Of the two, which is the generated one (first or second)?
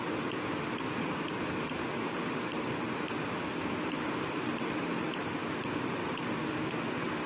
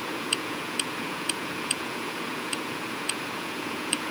second